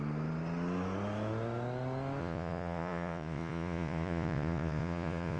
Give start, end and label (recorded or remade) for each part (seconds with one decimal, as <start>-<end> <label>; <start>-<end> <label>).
0.0-2.2 recorded; 2.2-5.4 remade